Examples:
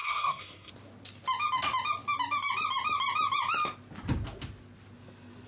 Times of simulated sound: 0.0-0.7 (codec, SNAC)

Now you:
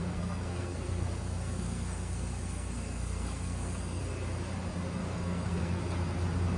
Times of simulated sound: 0.0-4.0 (codec, SNAC); 5.0-5.8

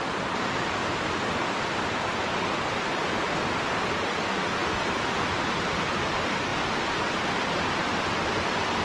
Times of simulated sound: none

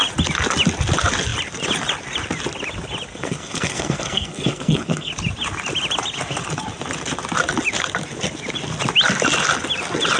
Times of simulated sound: 3.1-5.1 (codec, SNAC)

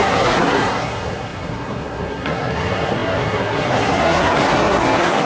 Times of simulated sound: 0.0-5.3 (codec, SNAC)

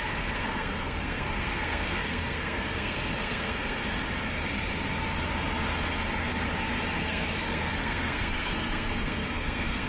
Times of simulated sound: 0.0-3.8 (codec, SNAC); 7.0-9.9